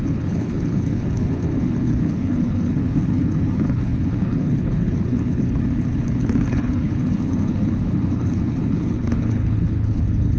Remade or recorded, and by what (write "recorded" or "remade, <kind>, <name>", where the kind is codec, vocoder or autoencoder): remade, codec, HILCodec